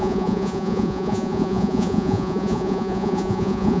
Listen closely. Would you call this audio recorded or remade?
remade